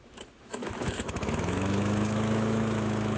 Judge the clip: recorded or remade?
remade